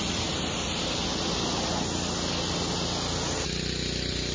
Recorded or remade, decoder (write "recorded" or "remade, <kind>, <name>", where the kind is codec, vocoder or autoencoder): recorded